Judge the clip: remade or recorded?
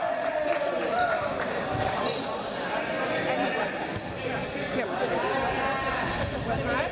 recorded